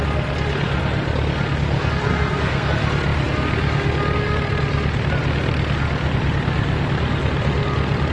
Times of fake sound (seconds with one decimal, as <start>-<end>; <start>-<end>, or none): 2.1-2.7